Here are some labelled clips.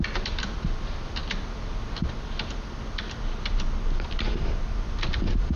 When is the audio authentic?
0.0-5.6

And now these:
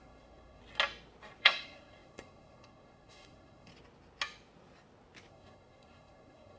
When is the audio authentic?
0.6-1.4; 3.7-5.3

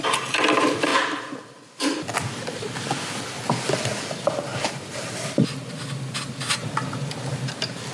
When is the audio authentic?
0.0-4.5; 5.1-7.9

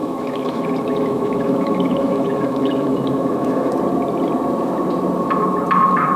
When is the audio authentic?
3.7-6.2

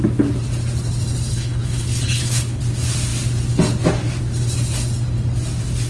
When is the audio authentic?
0.0-1.3; 2.6-5.9